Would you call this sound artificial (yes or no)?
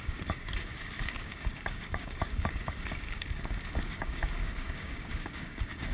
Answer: yes